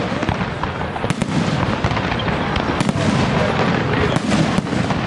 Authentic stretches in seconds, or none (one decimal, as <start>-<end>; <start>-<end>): 0.0-5.1